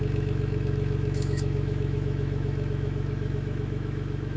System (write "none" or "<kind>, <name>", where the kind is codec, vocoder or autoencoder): autoencoder, DAC-VAE